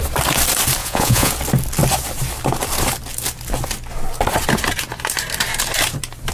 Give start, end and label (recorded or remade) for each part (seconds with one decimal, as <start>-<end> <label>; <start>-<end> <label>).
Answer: 0.0-0.8 recorded; 0.8-1.3 remade; 1.3-6.3 recorded